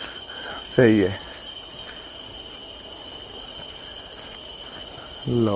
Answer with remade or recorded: recorded